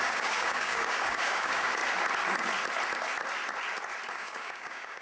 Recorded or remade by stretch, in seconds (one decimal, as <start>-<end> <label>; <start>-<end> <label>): 0.0-1.8 remade; 1.8-4.1 recorded; 4.1-5.0 remade